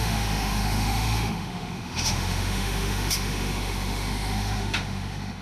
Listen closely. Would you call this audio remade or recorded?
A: remade